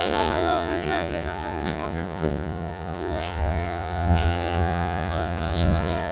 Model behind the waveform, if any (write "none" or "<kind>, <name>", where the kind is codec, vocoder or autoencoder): vocoder, Vocos